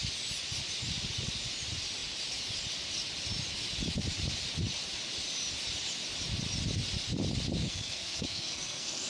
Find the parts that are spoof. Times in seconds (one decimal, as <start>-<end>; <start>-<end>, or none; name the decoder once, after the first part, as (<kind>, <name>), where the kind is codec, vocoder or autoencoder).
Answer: 7.6-9.1 (codec, SNAC)